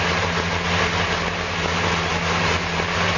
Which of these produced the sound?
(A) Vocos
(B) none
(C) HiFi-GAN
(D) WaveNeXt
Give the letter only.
B